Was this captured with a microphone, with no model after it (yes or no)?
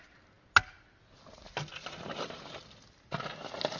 yes